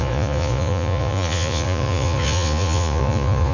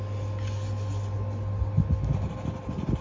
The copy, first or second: first